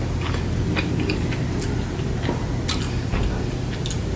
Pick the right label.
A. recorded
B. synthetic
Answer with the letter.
A